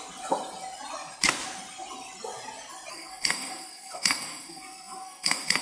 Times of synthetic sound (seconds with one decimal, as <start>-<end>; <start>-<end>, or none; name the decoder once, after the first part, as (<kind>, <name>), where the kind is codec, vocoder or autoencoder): 2.9-5.6 (codec, SNAC)

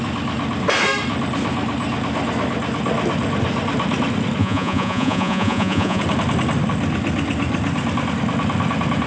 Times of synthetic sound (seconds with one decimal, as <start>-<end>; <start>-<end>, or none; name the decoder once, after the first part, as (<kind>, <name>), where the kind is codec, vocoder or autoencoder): 4.4-6.0 (vocoder, Vocos)

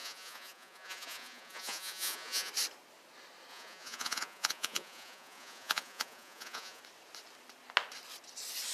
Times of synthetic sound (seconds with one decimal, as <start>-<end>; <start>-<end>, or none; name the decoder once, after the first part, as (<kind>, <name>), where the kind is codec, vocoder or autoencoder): 0.0-2.5 (vocoder, Vocos); 3.5-6.8

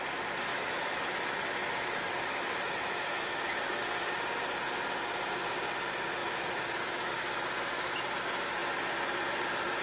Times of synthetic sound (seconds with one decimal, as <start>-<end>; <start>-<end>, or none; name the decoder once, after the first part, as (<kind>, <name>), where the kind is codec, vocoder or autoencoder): 0.5-3.7 (autoencoder, DAC-VAE); 6.2-7.2

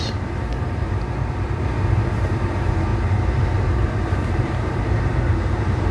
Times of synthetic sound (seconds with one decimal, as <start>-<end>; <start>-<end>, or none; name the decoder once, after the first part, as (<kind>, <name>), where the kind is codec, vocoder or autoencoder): 0.0-5.9 (vocoder, BigVGAN v2)

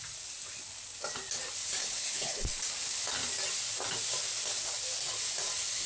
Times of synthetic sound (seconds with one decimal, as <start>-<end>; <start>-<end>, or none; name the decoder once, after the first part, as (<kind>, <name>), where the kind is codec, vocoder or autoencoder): 1.8-2.6 (codec, HILCodec)

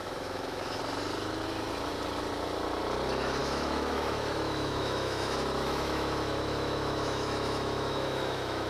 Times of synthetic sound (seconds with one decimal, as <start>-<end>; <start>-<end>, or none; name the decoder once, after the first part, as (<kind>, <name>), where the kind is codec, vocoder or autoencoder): 0.0-0.8 (autoencoder, DAC-VAE); 3.4-8.7

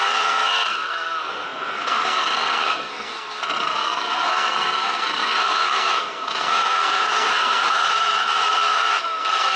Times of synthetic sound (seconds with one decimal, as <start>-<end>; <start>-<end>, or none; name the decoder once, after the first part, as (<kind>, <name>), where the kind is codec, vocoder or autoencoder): 0.0-9.6 (codec, SNAC)